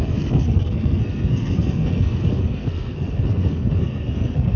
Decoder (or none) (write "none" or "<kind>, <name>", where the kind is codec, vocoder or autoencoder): codec, SNAC